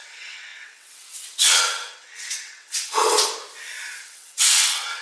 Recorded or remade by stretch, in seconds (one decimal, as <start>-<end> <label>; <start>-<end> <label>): 0.0-3.3 remade; 3.3-4.0 recorded; 4.0-5.0 remade